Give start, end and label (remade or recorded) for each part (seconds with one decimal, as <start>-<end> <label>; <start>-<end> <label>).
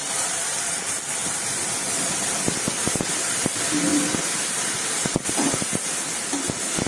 0.0-3.9 recorded; 3.9-4.5 remade; 4.5-6.9 recorded